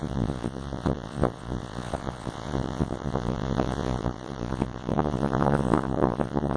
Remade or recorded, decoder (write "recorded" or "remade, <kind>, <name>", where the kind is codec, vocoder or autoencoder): remade, vocoder, Vocos